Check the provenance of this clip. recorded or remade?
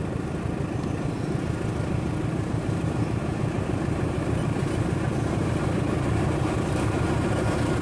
remade